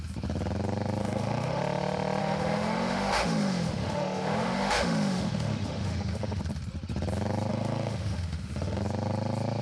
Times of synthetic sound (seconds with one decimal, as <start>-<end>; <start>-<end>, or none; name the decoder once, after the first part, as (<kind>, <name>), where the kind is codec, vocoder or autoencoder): 1.0-1.6 (autoencoder, DAC-VAE); 2.2-6.4; 7.5-8.8